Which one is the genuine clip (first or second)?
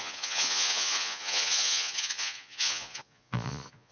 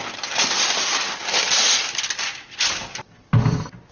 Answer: second